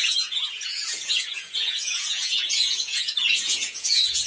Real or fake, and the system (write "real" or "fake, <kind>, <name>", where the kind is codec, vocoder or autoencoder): fake, vocoder, Vocos